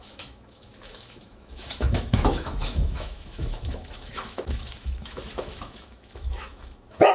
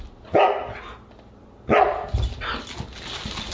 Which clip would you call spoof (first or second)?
first